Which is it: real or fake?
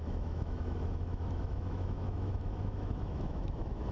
fake